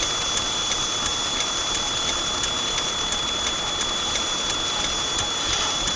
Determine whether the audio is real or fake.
real